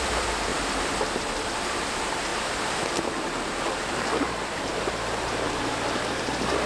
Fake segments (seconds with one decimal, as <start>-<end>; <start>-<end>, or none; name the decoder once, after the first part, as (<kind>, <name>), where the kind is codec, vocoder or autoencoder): 0.0-0.5 (vocoder, BigVGAN v2); 1.5-2.3; 2.9-6.7